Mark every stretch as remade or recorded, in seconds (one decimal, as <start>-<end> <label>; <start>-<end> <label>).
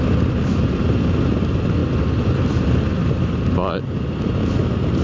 0.0-1.8 recorded; 1.8-2.5 remade; 2.5-3.0 recorded; 3.0-4.5 remade; 4.5-5.0 recorded